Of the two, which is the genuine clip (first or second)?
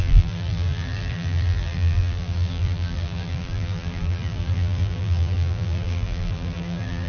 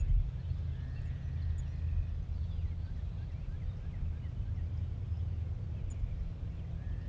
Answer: second